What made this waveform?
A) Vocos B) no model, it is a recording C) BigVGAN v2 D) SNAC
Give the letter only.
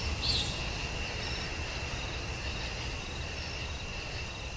B